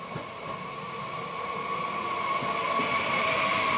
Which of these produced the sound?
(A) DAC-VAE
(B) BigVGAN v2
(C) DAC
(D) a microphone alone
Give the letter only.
D